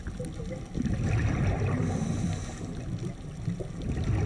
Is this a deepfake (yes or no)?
no